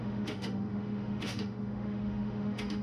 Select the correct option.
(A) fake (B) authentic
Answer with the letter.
A